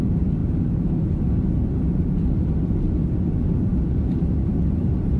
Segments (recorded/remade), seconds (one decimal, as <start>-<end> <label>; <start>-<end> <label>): 0.0-5.2 recorded

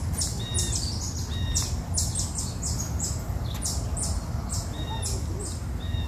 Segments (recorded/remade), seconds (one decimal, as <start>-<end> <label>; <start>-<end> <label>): 0.0-6.1 recorded

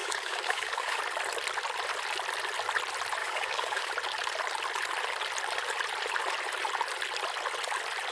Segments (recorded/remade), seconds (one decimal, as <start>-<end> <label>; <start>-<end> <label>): 0.0-1.0 remade; 1.0-3.2 recorded; 3.2-3.9 remade; 3.9-8.1 recorded

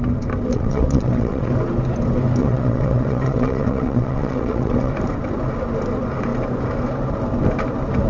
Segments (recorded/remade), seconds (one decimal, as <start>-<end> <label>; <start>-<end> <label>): 0.0-0.5 recorded; 0.5-1.5 remade; 1.5-2.4 recorded; 2.4-4.9 remade; 4.9-8.1 recorded

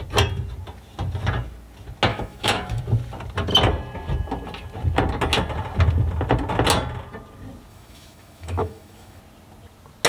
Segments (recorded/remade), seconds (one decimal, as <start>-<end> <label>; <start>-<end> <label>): 0.0-2.1 recorded; 2.1-2.8 remade; 2.8-7.7 recorded; 7.7-9.2 remade; 9.2-10.1 recorded

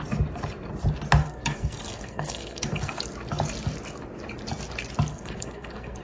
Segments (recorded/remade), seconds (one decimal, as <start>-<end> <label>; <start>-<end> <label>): 0.0-1.2 recorded; 1.2-3.0 remade; 3.0-5.1 recorded; 5.1-6.0 remade

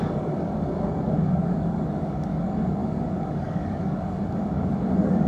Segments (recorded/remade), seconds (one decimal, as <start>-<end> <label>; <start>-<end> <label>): 0.0-5.3 remade

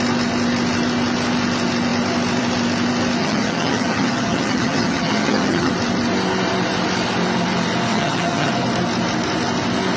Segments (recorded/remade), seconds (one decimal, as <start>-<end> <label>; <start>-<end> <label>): 0.0-3.2 recorded; 3.2-5.7 remade; 5.7-7.9 recorded; 7.9-8.5 remade; 8.5-10.0 recorded